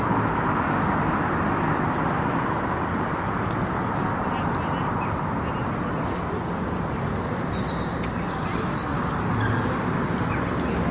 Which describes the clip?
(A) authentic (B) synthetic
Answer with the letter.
A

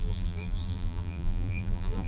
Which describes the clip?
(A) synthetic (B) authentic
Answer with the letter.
A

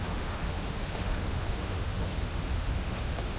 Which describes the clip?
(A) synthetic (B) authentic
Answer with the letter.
A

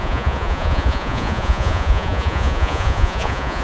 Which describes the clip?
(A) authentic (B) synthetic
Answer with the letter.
B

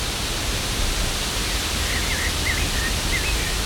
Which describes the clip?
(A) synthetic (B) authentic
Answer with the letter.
B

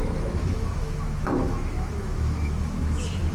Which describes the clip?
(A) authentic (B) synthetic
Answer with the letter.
B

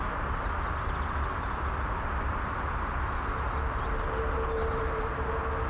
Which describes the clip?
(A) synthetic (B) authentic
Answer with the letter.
B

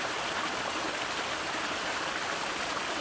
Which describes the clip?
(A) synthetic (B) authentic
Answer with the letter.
B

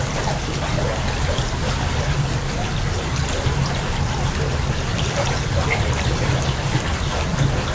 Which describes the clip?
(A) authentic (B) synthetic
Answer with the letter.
A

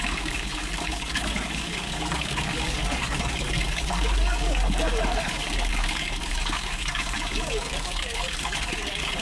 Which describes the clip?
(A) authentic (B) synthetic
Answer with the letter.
B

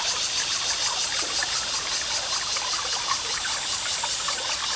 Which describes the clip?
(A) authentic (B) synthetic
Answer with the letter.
A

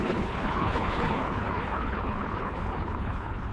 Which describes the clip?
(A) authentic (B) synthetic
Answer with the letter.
B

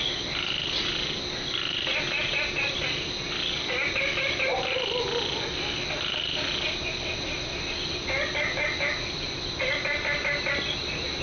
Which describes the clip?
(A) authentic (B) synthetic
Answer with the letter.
A